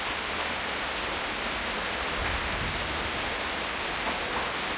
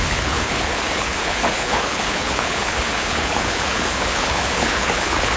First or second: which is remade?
second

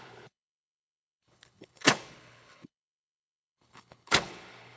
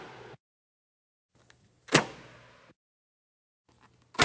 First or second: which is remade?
first